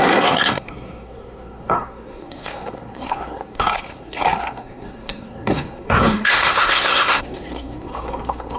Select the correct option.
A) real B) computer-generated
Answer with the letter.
B